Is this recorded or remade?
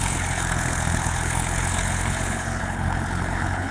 remade